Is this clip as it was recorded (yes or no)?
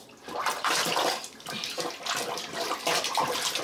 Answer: yes